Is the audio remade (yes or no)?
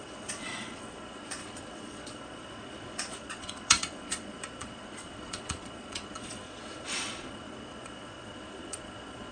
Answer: yes